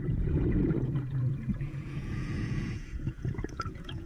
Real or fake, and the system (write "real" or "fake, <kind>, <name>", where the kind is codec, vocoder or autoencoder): fake, vocoder, Vocos